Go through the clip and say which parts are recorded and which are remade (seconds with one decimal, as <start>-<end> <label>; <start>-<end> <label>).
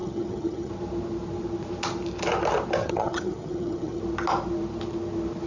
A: 0.0-0.7 remade; 0.7-2.8 recorded; 2.8-4.0 remade; 4.0-5.5 recorded